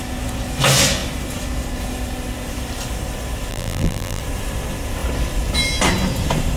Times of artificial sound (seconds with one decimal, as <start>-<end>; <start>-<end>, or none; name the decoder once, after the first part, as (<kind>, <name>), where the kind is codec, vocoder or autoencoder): 3.5-4.2 (vocoder, BigVGAN v2)